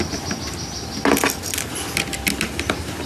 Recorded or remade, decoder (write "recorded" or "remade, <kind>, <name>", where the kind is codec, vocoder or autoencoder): recorded